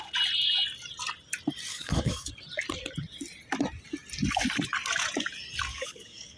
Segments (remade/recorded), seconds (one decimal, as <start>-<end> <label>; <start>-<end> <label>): 0.0-1.7 recorded; 1.7-2.3 remade; 2.3-5.7 recorded; 5.7-6.4 remade